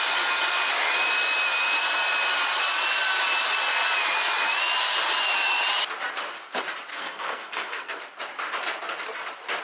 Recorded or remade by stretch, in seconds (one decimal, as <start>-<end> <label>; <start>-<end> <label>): 0.0-6.9 recorded; 6.9-8.0 remade; 8.0-9.6 recorded